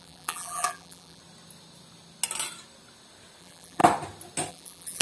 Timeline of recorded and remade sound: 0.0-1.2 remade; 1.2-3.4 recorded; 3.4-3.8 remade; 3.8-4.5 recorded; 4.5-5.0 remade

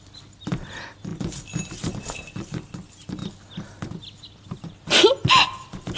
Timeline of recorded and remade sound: 0.0-6.0 recorded